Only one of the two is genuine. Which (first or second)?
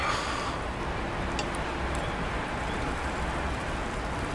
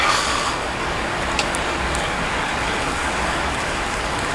first